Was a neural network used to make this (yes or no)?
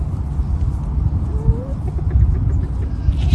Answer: no